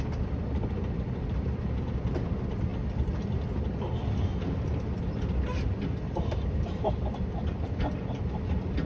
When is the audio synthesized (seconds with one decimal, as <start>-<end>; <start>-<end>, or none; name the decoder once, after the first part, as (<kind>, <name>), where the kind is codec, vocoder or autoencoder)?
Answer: 0.0-2.7 (vocoder, BigVGAN v2); 4.2-8.8